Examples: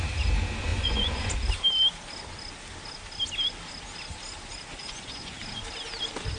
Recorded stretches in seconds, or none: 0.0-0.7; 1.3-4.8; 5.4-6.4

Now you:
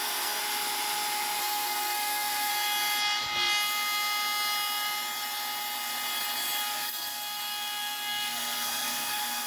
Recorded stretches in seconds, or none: 0.4-1.4; 2.5-6.6

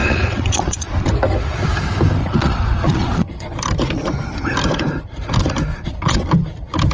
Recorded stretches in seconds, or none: 1.1-2.2; 3.6-5.7; 6.2-6.9

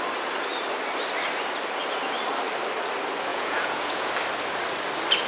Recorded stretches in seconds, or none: 0.0-3.3; 4.1-5.3

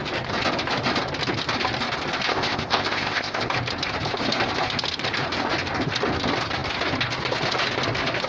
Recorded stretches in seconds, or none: 0.0-2.3; 3.4-8.3